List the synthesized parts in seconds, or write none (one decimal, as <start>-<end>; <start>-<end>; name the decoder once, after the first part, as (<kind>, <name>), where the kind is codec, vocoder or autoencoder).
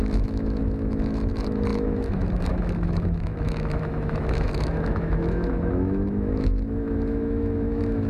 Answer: 0.0-8.1 (autoencoder, DAC-VAE)